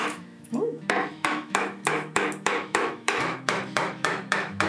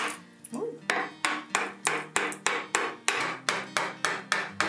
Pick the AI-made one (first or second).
first